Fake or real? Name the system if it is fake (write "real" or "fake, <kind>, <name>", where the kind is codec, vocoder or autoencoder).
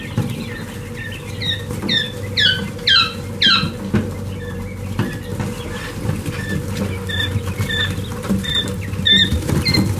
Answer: real